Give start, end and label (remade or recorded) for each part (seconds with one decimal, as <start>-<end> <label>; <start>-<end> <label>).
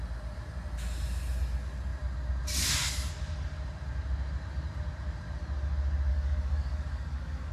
0.0-6.1 recorded; 6.1-7.5 remade